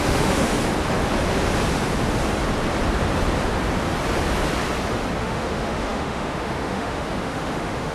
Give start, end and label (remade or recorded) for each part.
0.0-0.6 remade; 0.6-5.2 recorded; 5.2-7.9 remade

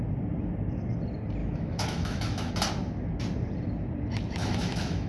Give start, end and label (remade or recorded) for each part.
0.0-1.4 recorded; 1.4-2.5 remade; 2.5-4.4 recorded; 4.4-5.1 remade

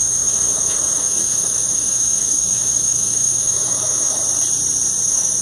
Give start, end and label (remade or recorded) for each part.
0.0-4.2 remade; 4.2-5.0 recorded; 5.0-5.4 remade

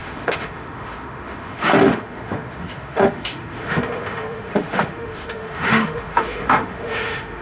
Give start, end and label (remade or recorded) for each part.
0.0-7.4 remade

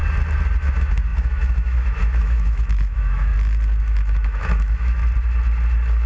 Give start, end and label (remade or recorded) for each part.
0.0-0.6 recorded; 0.6-3.3 remade; 3.3-3.8 recorded; 3.8-5.0 remade; 5.0-6.1 recorded

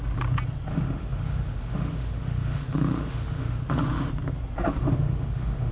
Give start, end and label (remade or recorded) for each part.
0.0-0.7 recorded; 0.7-4.1 remade; 4.1-4.8 recorded; 4.8-5.7 remade

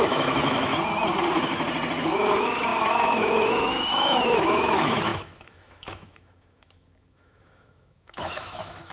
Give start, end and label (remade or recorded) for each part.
0.0-0.7 remade; 0.7-2.1 recorded; 2.1-8.9 remade

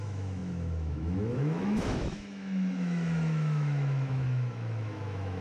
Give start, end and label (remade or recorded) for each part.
0.0-5.4 remade